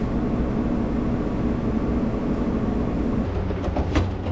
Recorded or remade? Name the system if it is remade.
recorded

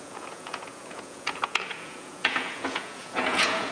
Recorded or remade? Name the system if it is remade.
remade, vocoder, Vocos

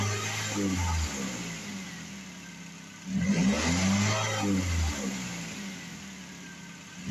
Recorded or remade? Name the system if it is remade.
recorded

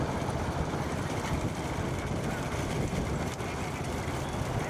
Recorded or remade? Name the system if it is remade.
remade, vocoder, BigVGAN v2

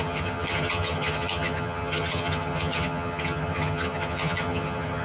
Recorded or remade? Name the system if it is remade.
remade, vocoder, HiFi-GAN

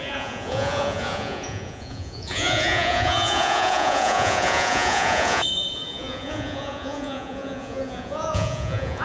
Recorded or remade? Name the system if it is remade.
remade, vocoder, Vocos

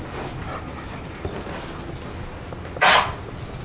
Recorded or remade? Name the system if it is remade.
recorded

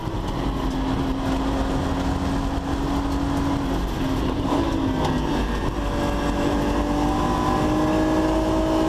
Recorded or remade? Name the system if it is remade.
recorded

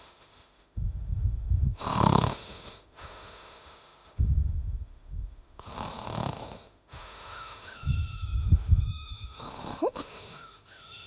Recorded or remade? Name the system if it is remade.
remade, autoencoder, DAC-VAE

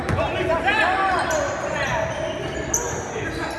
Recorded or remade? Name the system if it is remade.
recorded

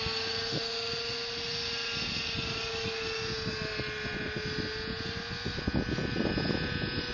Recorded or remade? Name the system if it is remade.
recorded